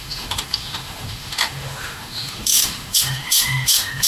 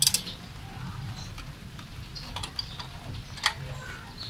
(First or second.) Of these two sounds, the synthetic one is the first